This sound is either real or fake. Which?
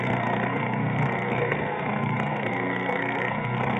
fake